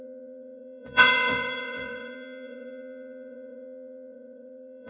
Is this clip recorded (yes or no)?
no